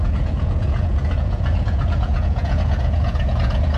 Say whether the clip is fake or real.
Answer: fake